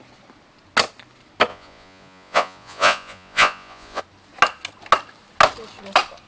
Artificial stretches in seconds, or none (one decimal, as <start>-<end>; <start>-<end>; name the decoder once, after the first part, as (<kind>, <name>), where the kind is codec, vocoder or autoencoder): 1.5-4.0 (vocoder, Vocos)